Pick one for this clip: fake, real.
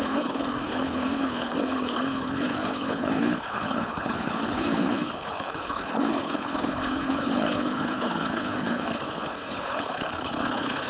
fake